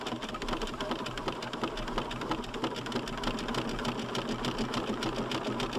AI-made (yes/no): no